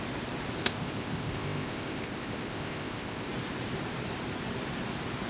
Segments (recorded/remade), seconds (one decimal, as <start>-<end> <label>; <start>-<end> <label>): 0.0-0.6 recorded; 0.6-3.3 remade; 3.3-5.3 recorded